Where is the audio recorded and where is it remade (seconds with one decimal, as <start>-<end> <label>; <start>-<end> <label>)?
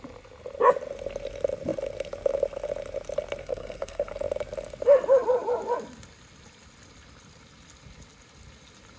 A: 0.0-3.4 recorded; 3.4-4.1 remade; 4.1-9.0 recorded